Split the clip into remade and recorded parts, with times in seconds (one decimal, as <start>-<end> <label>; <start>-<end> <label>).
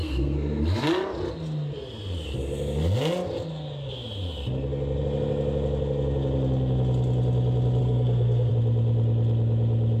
0.0-0.6 remade; 0.6-7.8 recorded; 7.8-8.5 remade; 8.5-10.0 recorded